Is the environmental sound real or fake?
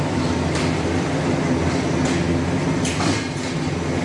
real